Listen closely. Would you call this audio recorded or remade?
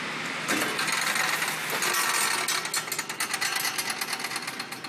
recorded